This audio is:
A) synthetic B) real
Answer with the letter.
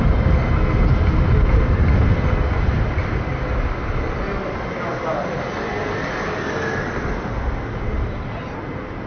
B